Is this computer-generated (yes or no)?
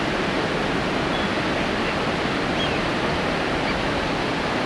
no